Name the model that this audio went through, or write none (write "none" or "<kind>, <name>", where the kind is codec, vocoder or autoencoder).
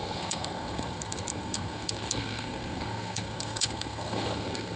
codec, SNAC